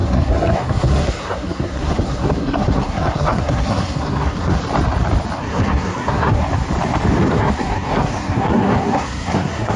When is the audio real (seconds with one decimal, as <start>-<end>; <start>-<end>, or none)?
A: 4.6-5.4; 6.4-7.3